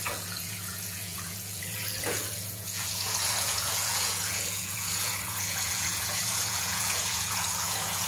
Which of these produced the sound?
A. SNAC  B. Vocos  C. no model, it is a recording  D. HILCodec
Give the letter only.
B